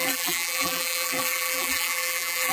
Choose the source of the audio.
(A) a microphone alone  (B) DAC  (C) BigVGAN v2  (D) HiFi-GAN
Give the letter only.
C